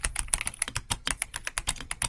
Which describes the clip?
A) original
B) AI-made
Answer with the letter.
A